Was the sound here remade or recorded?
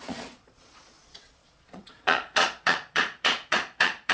remade